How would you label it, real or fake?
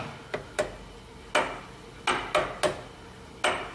real